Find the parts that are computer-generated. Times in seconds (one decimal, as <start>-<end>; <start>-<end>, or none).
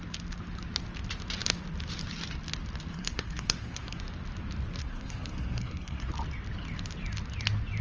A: 2.9-4.0; 4.8-6.1